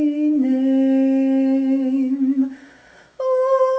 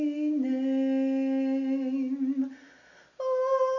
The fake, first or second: first